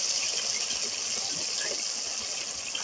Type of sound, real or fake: real